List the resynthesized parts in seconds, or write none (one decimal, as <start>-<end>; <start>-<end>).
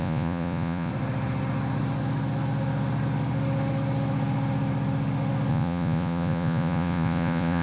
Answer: 0.0-0.9; 5.5-7.6